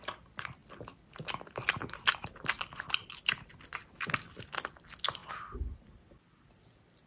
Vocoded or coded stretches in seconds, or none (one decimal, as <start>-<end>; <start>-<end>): none